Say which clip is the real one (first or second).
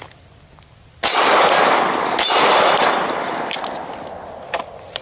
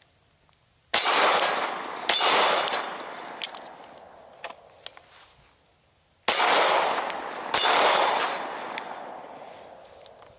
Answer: second